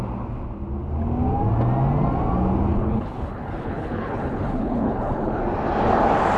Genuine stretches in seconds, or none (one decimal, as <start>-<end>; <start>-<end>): 0.0-2.7; 5.4-6.4